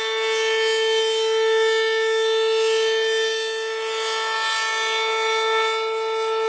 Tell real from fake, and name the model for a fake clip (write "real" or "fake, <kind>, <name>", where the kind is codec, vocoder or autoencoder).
real